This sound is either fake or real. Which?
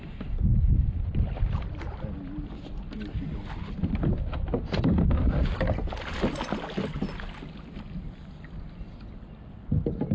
real